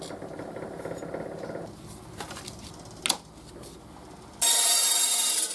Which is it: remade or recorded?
recorded